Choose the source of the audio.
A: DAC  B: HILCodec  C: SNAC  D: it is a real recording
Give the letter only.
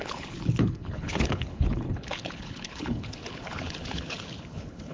B